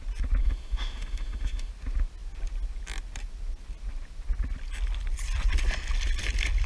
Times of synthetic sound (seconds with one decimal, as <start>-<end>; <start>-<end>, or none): 0.4-1.7

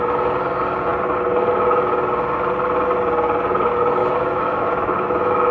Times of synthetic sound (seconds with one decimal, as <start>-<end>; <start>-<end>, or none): 4.0-5.5